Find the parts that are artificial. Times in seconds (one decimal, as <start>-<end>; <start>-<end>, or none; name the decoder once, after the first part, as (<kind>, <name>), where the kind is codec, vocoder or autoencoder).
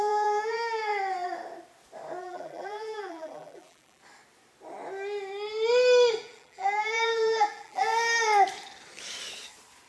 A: 0.0-0.9 (vocoder, BigVGAN v2); 2.2-4.0; 6.2-7.9